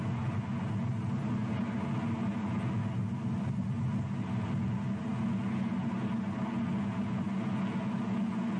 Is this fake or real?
real